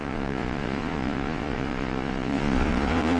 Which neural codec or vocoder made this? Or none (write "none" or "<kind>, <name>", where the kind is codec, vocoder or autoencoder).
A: vocoder, Vocos